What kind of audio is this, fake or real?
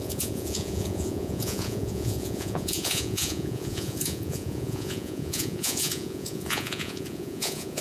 fake